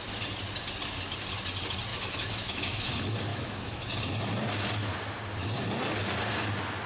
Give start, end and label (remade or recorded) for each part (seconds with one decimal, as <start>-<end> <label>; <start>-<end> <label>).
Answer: 0.0-1.9 recorded; 1.9-2.9 remade; 2.9-3.3 recorded; 3.3-3.8 remade; 3.8-6.9 recorded